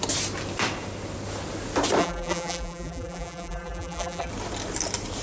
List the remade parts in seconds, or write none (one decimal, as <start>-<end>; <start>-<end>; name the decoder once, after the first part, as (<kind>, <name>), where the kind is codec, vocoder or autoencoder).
2.0-4.3 (vocoder, BigVGAN v2)